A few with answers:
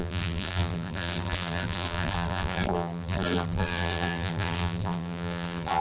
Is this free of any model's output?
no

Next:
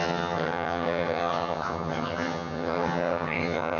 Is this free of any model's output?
no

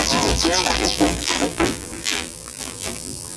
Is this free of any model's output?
no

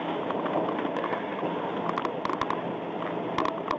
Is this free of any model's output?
yes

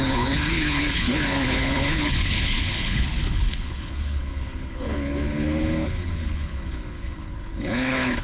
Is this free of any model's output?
no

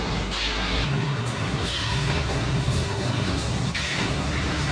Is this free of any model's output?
no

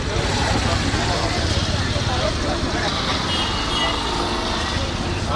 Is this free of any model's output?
yes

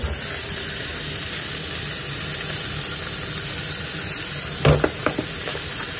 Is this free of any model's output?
yes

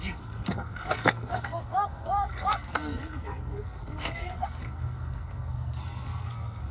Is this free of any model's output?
no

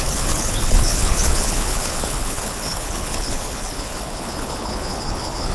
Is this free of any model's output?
no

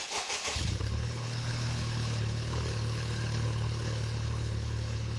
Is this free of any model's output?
no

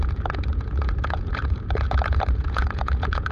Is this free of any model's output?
no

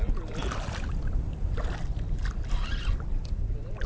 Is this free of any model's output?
yes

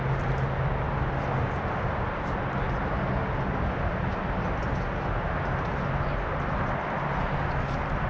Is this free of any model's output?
yes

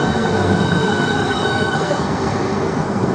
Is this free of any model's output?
no